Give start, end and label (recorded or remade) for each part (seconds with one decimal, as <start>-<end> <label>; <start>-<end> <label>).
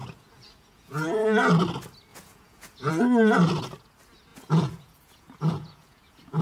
0.0-1.2 remade; 1.2-2.1 recorded; 2.1-2.9 remade; 2.9-4.3 recorded; 4.3-6.4 remade